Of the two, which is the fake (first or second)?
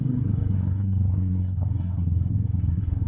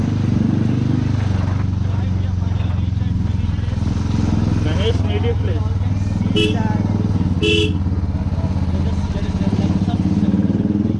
first